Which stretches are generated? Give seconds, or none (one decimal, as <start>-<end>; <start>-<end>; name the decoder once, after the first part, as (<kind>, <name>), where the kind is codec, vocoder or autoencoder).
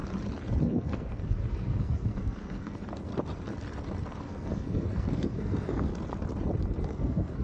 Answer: 0.6-3.1 (codec, SNAC); 4.2-5.9; 6.8-7.4